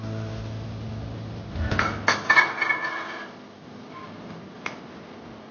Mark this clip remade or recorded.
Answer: recorded